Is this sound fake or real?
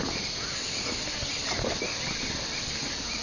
real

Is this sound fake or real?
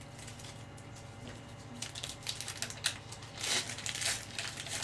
real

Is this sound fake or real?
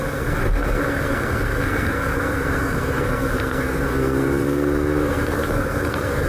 fake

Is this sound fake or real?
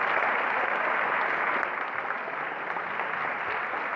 real